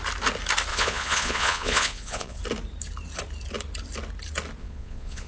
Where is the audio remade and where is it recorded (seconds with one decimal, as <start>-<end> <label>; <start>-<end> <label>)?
0.0-0.7 recorded; 0.7-2.4 remade; 2.4-4.6 recorded; 4.6-5.3 remade